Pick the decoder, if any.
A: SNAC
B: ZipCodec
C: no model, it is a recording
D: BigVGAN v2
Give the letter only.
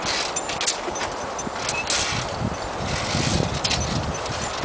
C